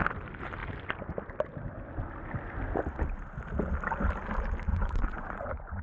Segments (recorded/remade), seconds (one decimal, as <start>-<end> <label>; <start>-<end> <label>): 0.0-4.7 recorded; 4.7-5.8 remade